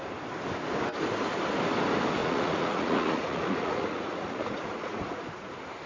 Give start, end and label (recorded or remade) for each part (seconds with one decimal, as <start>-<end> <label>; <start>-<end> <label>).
0.0-2.2 recorded; 2.2-5.5 remade; 5.5-5.9 recorded